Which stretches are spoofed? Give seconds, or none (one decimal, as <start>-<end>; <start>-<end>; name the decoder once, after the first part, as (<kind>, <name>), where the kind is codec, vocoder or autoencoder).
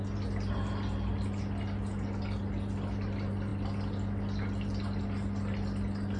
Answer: none